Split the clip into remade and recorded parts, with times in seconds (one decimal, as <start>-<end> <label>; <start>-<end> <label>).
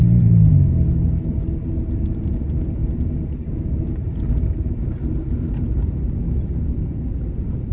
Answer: 0.0-0.5 remade; 0.5-2.8 recorded; 2.8-5.9 remade; 5.9-7.7 recorded